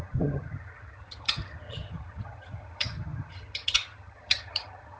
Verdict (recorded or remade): remade